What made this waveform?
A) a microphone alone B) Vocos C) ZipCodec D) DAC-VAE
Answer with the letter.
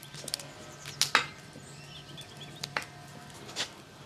A